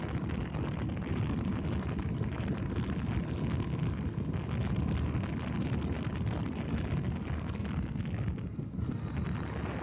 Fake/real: real